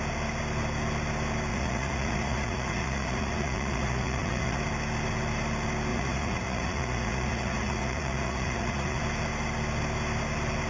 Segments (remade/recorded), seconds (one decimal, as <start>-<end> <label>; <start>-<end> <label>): 0.0-1.5 recorded; 1.5-4.6 remade; 4.6-5.9 recorded; 5.9-9.0 remade; 9.0-10.7 recorded